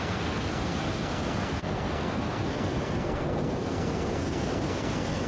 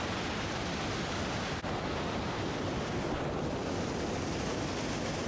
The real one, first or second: second